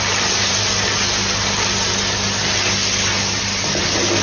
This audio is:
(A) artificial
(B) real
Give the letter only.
B